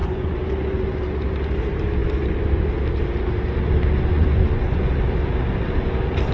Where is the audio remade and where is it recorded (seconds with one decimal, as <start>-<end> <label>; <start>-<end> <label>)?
0.0-0.5 remade; 0.5-4.1 recorded; 4.1-4.9 remade; 4.9-6.3 recorded